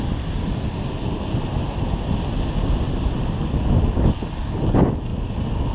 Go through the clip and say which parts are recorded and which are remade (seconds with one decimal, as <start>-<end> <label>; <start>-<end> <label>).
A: 0.0-5.7 recorded